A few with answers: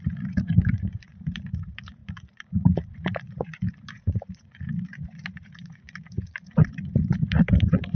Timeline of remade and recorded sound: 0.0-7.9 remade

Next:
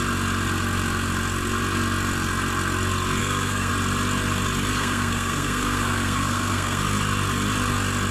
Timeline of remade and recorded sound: 0.0-3.2 recorded; 3.2-3.7 remade; 3.7-4.7 recorded; 4.7-6.8 remade; 6.8-8.1 recorded

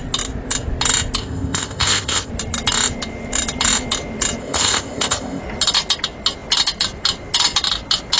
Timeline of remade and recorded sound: 0.0-1.2 recorded; 1.2-2.3 remade; 2.3-4.4 recorded; 4.4-5.4 remade; 5.4-8.2 recorded